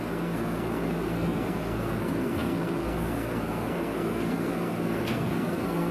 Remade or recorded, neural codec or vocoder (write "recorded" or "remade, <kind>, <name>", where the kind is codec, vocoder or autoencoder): remade, codec, SNAC